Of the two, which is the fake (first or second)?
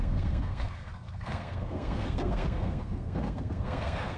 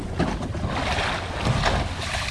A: first